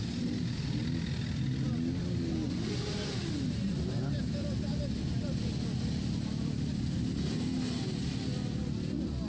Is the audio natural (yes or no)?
yes